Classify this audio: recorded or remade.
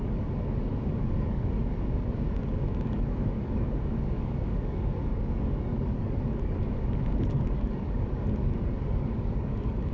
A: remade